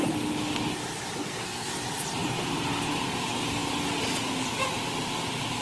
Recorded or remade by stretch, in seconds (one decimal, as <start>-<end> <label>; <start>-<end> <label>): 0.0-1.2 recorded; 1.2-1.7 remade; 1.7-5.6 recorded